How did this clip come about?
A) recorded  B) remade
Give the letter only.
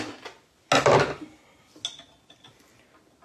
A